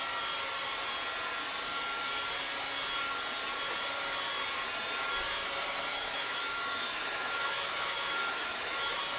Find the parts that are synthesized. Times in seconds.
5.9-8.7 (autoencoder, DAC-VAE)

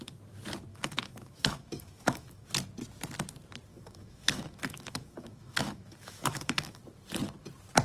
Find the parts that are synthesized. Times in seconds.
0.7-2.5 (autoencoder, DAC-VAE); 3.7-6.8

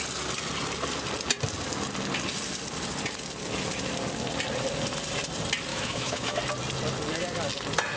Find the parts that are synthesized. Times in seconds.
5.7-6.4 (autoencoder, DAC-VAE)

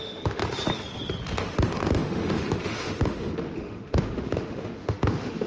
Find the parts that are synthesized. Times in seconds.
0.0-0.4 (autoencoder, DAC-VAE); 1.4-5.5

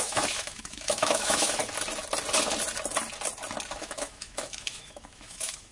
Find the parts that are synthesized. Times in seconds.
0.0-1.6 (autoencoder, DAC-VAE); 3.8-5.7